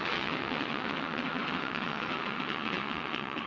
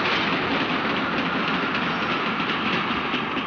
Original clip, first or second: second